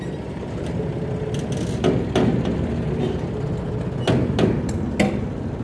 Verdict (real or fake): real